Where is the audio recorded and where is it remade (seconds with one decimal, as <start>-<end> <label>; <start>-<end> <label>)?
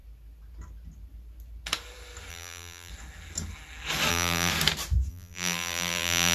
0.0-2.3 recorded; 2.3-2.9 remade; 2.9-4.1 recorded; 4.1-4.5 remade; 4.5-5.1 recorded; 5.1-6.3 remade